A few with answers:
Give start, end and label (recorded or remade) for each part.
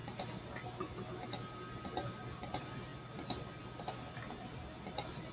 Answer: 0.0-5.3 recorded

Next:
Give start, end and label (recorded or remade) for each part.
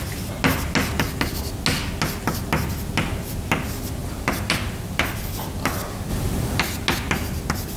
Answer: 0.0-4.0 recorded; 4.0-5.2 remade; 5.2-6.1 recorded; 6.1-6.6 remade; 6.6-7.8 recorded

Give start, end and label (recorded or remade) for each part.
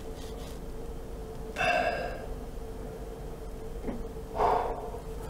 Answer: 0.0-5.3 recorded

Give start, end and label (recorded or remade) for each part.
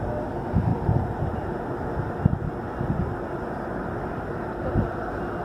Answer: 0.0-5.4 recorded